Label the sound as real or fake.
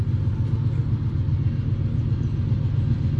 real